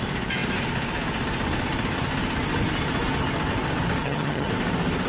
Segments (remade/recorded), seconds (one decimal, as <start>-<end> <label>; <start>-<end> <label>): 0.0-4.0 recorded; 4.0-4.5 remade; 4.5-5.1 recorded